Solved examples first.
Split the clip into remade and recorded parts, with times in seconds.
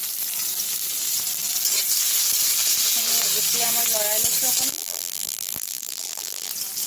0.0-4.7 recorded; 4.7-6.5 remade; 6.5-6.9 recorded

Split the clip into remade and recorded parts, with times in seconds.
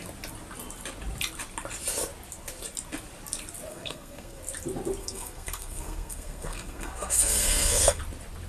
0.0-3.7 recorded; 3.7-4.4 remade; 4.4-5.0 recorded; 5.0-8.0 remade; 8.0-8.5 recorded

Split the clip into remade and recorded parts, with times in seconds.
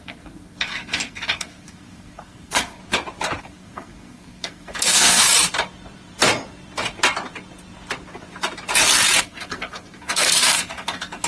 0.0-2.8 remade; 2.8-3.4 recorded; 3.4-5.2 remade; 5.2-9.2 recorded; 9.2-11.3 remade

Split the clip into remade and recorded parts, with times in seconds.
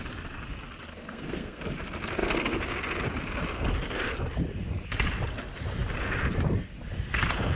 0.0-0.9 recorded; 0.9-1.6 remade; 1.6-7.6 recorded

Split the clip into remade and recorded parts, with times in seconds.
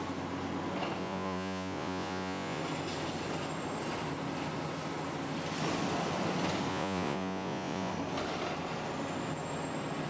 0.0-1.0 recorded; 1.0-2.6 remade; 2.6-6.7 recorded; 6.7-7.9 remade; 7.9-10.1 recorded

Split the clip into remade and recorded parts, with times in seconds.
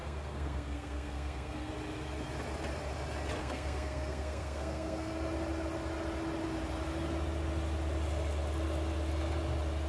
0.0-1.7 remade; 1.7-3.4 recorded; 3.4-5.1 remade; 5.1-9.9 recorded